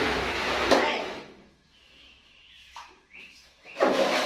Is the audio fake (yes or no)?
yes